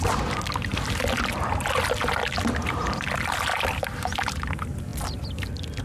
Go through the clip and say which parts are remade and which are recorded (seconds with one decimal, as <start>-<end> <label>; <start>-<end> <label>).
0.0-0.7 recorded; 0.7-1.3 remade; 1.3-2.6 recorded; 2.6-3.1 remade; 3.1-3.5 recorded; 3.5-4.0 remade; 4.0-4.9 recorded; 4.9-5.8 remade

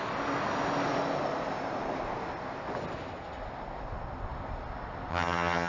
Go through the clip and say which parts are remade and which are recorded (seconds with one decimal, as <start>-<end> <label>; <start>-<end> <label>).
0.0-5.1 recorded; 5.1-5.7 remade

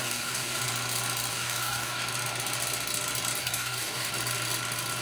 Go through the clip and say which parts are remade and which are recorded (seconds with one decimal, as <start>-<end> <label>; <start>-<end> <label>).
0.0-0.6 remade; 0.6-1.3 recorded; 1.3-2.0 remade; 2.0-3.4 recorded; 3.4-4.1 remade; 4.1-5.0 recorded

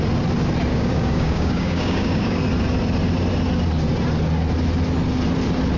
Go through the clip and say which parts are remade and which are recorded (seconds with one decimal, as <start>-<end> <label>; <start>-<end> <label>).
0.0-0.7 recorded; 0.7-2.4 remade; 2.4-5.8 recorded

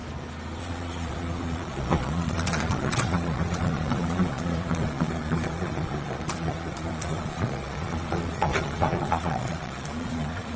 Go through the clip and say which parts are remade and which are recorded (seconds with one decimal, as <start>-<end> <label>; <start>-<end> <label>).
0.0-0.6 recorded; 0.6-10.6 remade

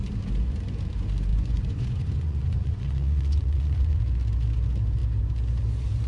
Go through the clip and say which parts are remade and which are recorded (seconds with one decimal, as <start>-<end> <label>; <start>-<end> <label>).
0.0-1.3 recorded; 1.3-4.0 remade; 4.0-6.1 recorded

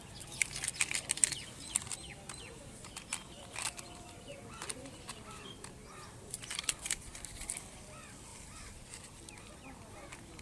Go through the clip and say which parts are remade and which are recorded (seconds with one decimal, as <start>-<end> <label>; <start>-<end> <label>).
0.0-3.1 recorded; 3.1-4.3 remade; 4.3-5.8 recorded; 5.8-7.8 remade; 7.8-10.4 recorded

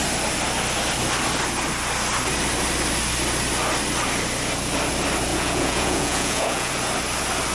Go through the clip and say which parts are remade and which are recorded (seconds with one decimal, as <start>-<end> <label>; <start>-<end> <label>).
0.0-5.3 recorded; 5.3-6.7 remade; 6.7-7.5 recorded